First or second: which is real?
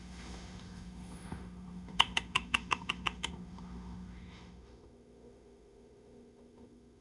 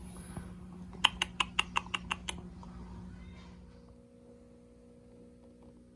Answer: second